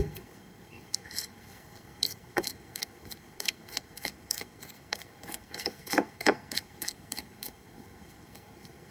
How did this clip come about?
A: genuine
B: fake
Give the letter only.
B